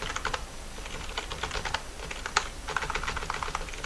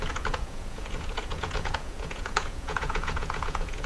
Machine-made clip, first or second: second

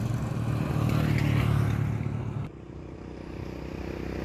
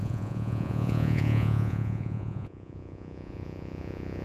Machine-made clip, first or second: second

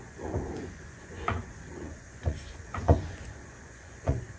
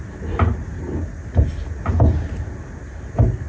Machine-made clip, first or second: first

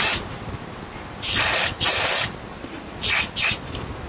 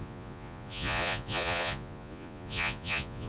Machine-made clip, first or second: second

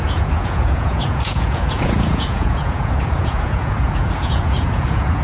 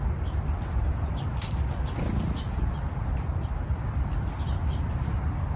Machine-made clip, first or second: first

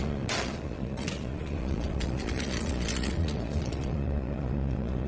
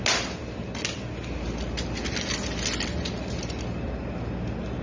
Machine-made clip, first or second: first